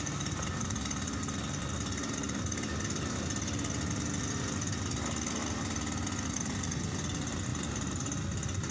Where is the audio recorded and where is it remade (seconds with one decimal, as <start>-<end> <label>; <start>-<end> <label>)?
0.0-8.7 recorded